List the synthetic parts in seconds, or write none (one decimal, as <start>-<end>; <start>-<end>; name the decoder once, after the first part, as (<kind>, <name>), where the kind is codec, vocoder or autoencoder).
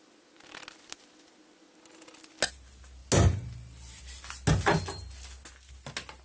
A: none